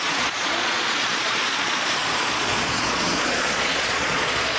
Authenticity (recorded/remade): remade